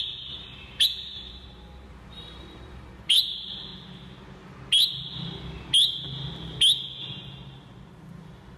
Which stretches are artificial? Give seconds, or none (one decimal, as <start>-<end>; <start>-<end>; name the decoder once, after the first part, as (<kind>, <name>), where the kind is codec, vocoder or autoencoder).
0.0-3.7 (vocoder, BigVGAN v2); 7.3-8.6